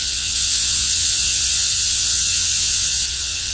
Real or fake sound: fake